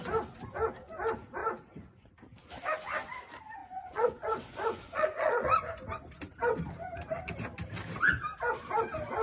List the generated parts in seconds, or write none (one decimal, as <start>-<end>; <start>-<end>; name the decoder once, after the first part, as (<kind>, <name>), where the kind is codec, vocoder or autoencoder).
1.4-2.1 (vocoder, Vocos); 3.6-5.5